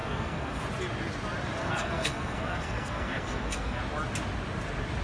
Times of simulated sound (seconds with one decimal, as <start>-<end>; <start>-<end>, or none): 0.0-0.6; 1.6-3.8